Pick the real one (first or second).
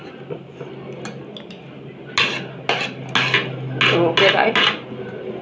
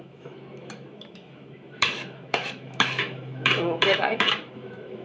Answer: first